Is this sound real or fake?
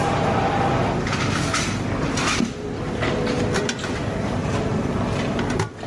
real